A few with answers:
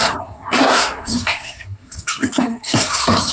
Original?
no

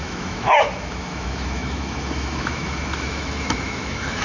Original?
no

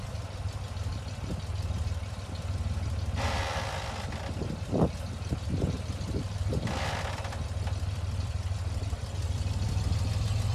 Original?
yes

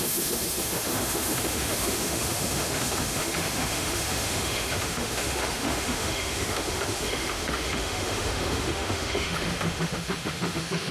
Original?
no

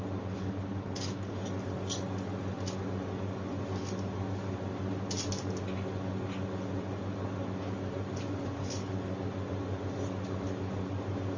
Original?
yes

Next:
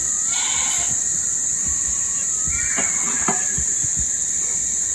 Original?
yes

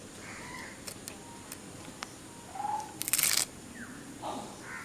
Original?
yes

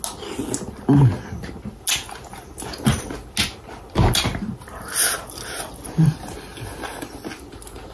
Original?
yes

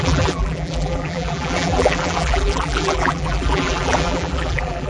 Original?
no